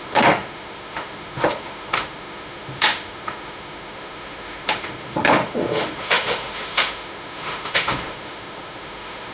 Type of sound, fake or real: fake